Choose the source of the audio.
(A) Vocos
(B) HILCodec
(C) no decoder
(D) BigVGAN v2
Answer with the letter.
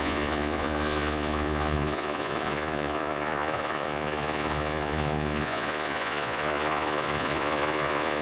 A